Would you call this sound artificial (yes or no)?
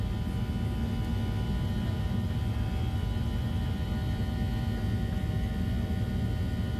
no